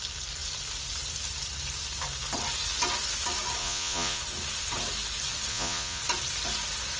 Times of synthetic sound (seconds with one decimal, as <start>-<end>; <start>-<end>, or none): 3.6-4.2; 5.5-6.0